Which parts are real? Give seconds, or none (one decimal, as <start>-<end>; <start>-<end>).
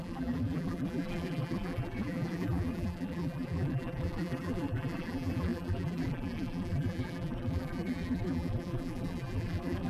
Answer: none